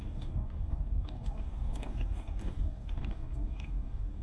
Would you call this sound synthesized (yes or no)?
yes